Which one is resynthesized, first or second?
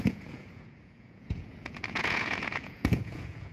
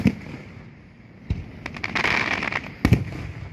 first